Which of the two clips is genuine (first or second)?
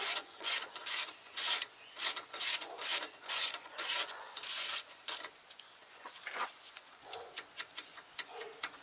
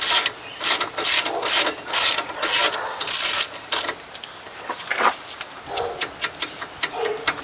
second